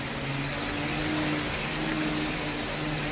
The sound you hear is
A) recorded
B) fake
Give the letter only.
A